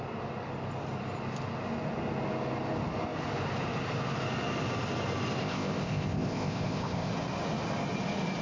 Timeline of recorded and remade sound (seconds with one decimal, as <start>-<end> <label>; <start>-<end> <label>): 0.0-5.4 recorded; 5.4-7.1 remade; 7.1-8.4 recorded